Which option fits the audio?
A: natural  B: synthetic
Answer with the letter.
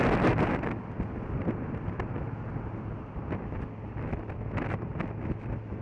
A